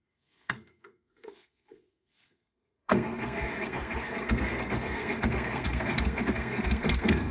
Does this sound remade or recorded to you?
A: remade